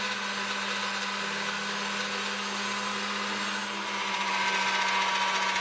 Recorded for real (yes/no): yes